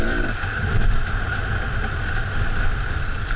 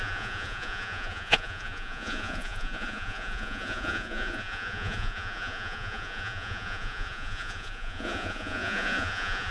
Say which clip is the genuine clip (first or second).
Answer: first